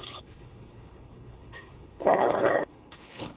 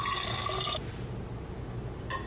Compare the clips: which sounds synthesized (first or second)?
first